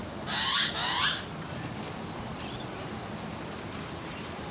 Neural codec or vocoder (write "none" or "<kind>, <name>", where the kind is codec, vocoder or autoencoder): none